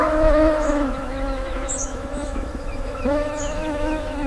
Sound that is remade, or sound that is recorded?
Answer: remade